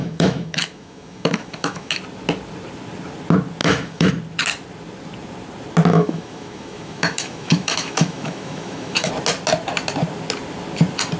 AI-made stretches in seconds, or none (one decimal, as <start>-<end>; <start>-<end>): 0.0-2.0; 3.6-4.1; 5.9-9.1

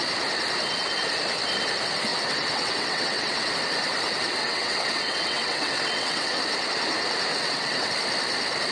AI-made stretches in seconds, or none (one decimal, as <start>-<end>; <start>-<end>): 2.1-3.5; 4.4-6.4; 7.3-7.9

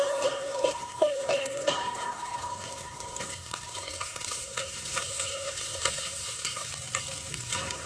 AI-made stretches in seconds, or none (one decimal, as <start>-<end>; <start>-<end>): 0.0-6.7; 7.3-7.9

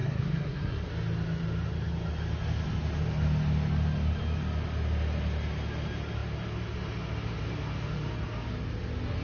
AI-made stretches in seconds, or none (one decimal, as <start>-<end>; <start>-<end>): 0.0-0.9

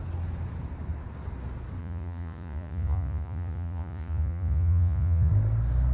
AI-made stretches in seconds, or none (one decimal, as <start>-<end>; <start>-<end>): 1.8-5.3

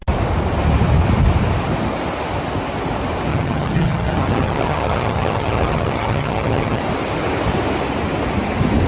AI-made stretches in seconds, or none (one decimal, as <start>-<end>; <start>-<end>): 3.3-6.8